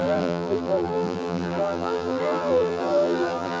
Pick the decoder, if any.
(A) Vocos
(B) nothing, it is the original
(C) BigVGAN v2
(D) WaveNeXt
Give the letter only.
C